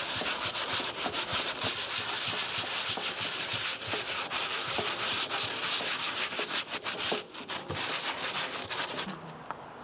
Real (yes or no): yes